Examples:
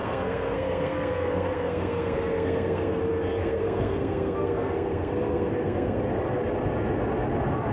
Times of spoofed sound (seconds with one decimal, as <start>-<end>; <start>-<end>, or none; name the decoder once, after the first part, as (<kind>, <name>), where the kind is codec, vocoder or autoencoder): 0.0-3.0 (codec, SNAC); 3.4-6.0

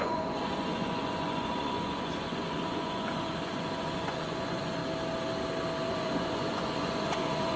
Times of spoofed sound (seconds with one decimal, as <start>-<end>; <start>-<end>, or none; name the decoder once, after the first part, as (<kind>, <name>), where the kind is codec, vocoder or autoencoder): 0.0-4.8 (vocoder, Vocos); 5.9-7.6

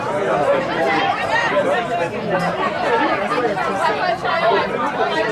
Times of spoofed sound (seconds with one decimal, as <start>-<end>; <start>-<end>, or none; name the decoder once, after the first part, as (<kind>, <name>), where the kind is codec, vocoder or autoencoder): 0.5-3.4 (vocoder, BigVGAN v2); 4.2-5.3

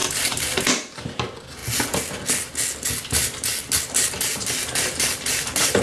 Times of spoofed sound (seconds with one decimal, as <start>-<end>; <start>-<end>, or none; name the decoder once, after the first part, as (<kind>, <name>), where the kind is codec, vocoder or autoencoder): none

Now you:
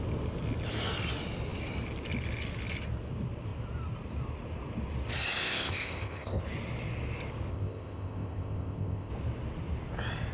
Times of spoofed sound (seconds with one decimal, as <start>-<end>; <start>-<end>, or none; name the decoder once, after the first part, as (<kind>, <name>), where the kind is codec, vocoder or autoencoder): 5.4-6.4 (codec, ZipCodec); 7.5-9.1

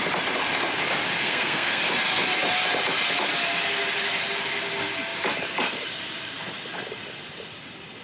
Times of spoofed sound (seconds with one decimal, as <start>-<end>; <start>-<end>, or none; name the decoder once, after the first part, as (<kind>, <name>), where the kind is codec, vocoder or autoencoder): 1.2-1.8 (codec, SNAC)